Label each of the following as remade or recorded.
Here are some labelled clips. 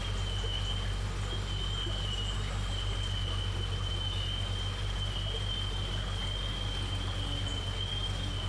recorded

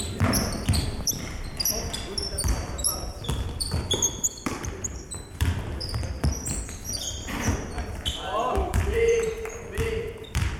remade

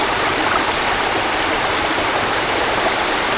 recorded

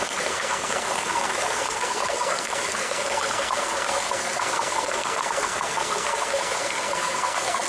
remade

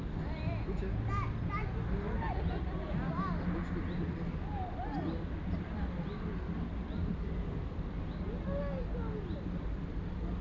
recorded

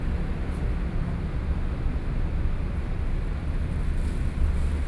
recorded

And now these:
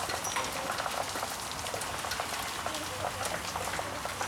recorded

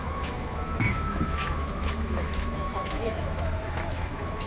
remade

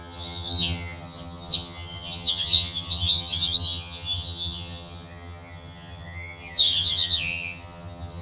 remade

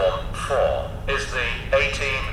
recorded